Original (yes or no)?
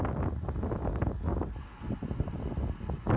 yes